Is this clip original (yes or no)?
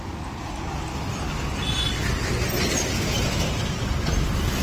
yes